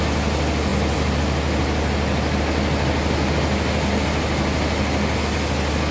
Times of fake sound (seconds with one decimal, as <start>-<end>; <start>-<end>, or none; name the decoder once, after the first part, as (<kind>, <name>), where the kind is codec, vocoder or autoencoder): 0.7-1.2 (vocoder, BigVGAN v2)